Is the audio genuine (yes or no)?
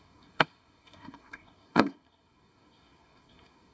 no